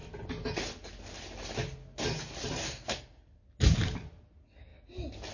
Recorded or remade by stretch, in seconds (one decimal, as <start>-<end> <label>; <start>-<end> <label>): 0.0-2.6 recorded; 2.6-3.4 remade; 3.4-5.3 recorded